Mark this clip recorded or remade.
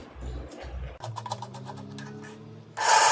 recorded